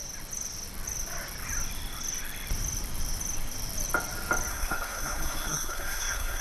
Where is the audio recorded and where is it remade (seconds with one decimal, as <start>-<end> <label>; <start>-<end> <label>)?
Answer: 0.0-4.5 recorded; 4.5-6.4 remade